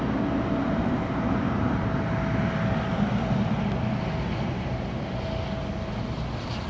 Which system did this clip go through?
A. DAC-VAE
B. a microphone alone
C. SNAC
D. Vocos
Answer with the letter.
B